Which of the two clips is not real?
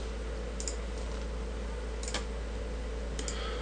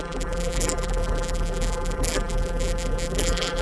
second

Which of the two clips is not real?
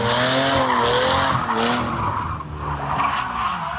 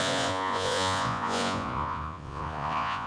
second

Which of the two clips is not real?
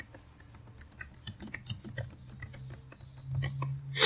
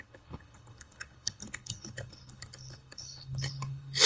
second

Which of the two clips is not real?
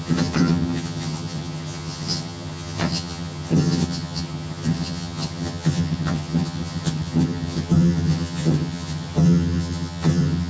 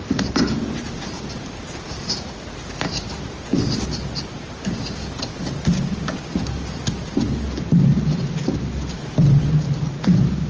first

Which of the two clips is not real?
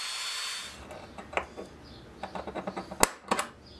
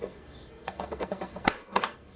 second